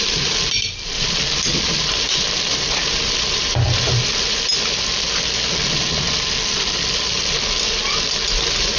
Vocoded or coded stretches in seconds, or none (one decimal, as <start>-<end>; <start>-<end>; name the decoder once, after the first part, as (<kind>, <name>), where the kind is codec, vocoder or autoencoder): 0.0-4.5 (vocoder, BigVGAN v2); 8.3-8.8